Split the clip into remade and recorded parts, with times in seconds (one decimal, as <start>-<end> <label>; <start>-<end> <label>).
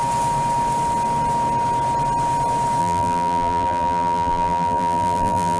0.0-2.8 recorded; 2.8-5.6 remade